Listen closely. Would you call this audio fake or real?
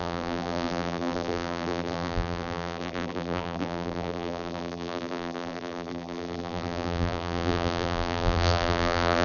fake